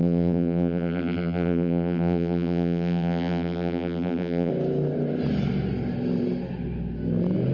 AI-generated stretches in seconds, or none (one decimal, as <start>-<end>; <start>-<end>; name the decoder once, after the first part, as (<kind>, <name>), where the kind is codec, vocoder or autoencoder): 0.0-4.5 (vocoder, BigVGAN v2)